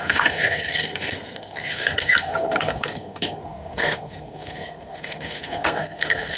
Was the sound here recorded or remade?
remade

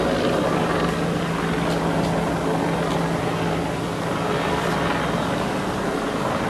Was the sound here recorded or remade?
recorded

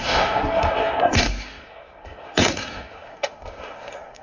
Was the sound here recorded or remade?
remade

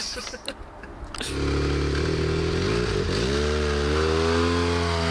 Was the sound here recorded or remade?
recorded